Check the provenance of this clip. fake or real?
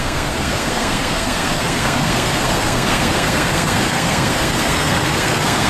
fake